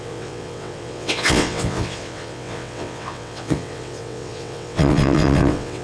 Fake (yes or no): yes